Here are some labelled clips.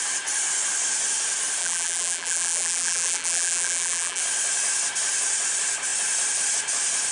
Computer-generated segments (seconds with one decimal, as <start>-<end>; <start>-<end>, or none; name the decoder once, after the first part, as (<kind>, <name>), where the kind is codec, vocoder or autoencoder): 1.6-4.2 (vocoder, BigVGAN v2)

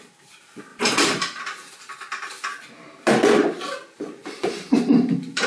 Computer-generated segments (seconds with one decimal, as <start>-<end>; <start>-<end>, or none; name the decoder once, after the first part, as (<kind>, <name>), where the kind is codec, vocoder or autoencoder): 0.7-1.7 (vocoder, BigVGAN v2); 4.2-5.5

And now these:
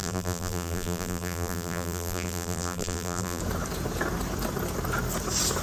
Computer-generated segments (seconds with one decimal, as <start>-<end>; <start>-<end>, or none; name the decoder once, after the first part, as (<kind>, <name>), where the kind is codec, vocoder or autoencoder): 0.0-3.4 (vocoder, BigVGAN v2)